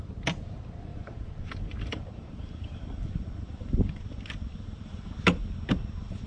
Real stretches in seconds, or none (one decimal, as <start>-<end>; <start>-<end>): 0.0-0.9; 4.0-4.5; 5.1-6.3